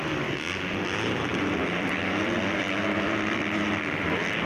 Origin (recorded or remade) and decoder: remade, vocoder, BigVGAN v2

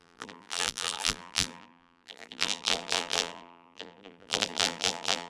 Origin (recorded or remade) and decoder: remade, vocoder, BigVGAN v2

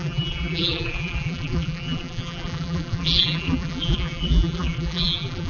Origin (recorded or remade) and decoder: remade, vocoder, BigVGAN v2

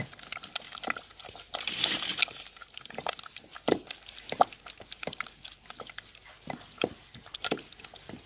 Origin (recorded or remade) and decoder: recorded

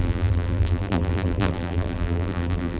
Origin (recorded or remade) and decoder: remade, vocoder, BigVGAN v2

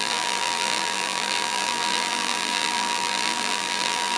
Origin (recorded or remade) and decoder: remade, vocoder, BigVGAN v2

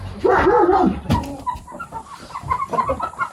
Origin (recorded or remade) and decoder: remade, vocoder, BigVGAN v2